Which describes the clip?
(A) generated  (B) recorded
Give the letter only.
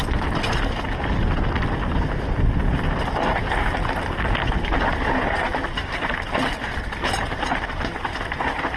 B